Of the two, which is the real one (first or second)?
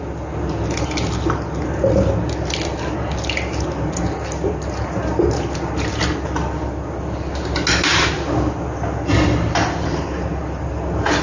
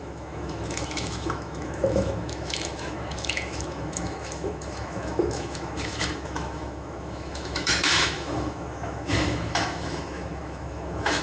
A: first